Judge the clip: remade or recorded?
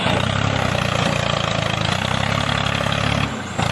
recorded